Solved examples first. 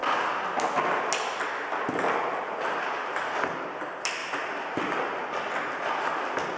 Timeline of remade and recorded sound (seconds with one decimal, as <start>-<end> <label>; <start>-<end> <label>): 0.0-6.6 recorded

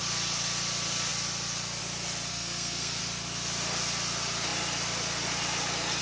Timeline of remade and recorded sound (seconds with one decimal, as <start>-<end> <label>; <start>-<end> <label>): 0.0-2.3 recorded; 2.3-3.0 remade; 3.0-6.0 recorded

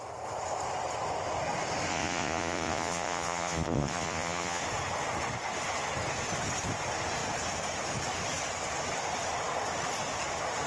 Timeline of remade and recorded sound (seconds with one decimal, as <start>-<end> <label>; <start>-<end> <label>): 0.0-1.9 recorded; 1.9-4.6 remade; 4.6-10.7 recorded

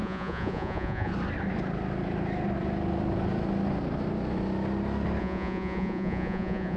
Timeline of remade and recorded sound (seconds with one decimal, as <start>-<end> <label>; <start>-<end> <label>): 0.0-1.1 remade; 1.1-5.2 recorded; 5.2-6.8 remade